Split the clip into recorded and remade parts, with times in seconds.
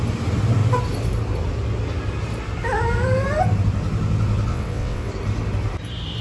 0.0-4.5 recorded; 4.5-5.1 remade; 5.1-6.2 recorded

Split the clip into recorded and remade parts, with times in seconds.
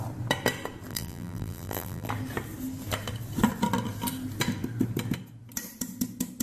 0.0-0.9 recorded; 0.9-2.1 remade; 2.1-6.4 recorded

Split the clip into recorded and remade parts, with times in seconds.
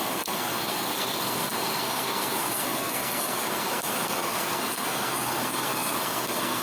0.0-6.6 remade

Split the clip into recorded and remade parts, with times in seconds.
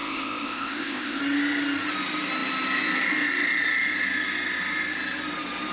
0.0-1.2 remade; 1.2-5.7 recorded